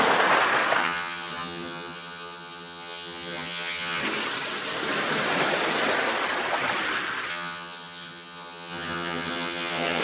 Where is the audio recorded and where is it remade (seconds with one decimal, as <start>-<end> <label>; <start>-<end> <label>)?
0.0-0.8 recorded; 0.8-4.0 remade; 4.0-7.3 recorded; 7.3-10.0 remade